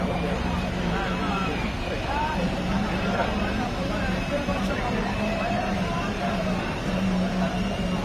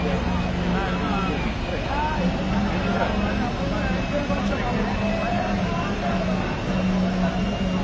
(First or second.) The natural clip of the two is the second